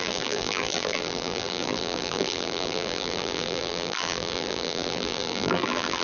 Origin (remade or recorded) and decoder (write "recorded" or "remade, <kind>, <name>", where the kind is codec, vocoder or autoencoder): remade, vocoder, BigVGAN v2